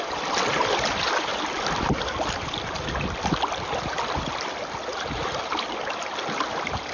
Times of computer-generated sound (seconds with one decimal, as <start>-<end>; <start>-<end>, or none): none